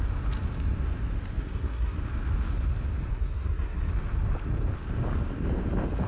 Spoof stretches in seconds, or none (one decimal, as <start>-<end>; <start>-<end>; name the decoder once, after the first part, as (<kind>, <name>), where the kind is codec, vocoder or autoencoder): 1.4-2.0 (codec, SNAC); 3.1-3.9